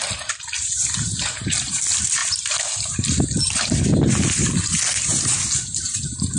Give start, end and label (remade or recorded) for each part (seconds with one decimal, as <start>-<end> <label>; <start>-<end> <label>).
0.0-0.6 recorded; 0.6-1.8 remade; 1.8-6.4 recorded